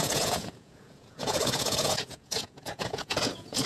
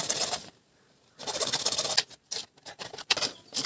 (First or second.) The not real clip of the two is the first